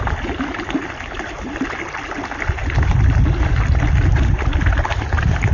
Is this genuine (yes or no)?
yes